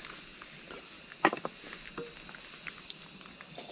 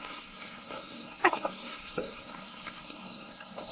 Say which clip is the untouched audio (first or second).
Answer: first